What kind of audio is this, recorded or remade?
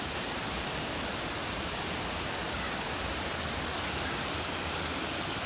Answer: recorded